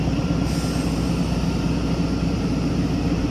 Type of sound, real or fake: real